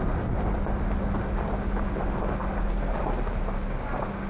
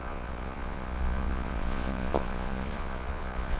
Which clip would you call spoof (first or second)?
second